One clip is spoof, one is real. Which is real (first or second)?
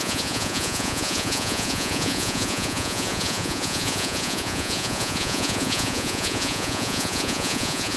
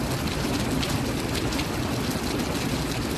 second